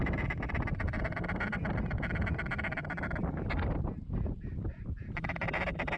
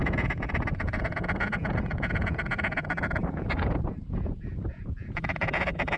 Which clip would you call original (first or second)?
first